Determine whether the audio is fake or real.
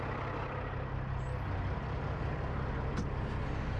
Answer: real